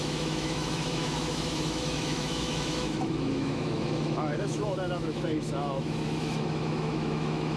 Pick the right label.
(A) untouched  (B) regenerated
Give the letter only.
B